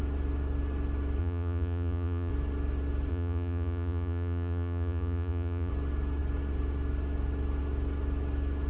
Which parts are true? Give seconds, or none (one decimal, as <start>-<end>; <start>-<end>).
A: 0.0-1.2; 2.3-3.1; 5.7-8.7